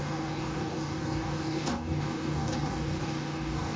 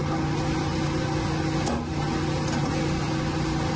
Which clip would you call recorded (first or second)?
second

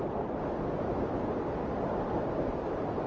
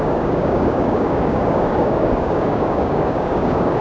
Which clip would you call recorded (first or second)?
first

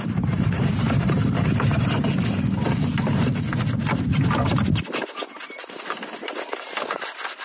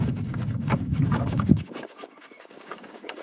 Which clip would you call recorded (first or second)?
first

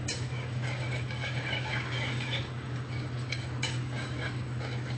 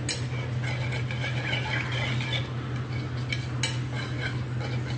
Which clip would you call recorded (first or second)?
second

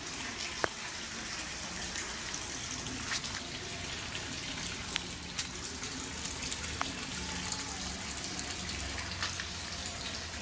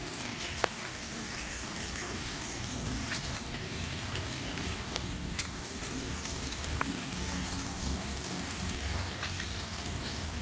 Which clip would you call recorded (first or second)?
first